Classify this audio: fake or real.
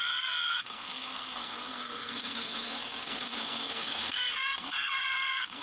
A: fake